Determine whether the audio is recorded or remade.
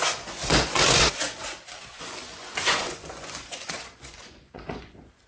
remade